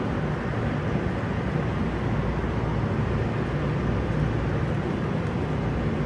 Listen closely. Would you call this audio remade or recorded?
recorded